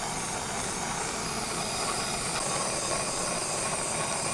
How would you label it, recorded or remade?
recorded